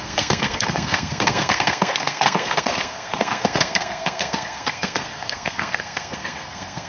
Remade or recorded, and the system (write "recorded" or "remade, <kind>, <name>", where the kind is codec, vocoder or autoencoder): remade, codec, SNAC